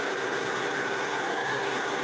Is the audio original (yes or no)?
no